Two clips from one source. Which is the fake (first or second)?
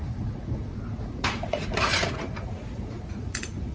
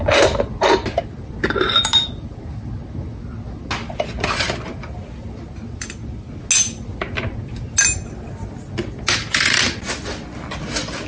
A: first